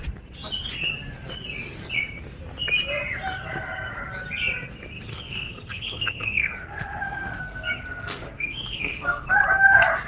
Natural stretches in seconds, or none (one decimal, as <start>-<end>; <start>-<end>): 0.0-5.1; 9.3-10.1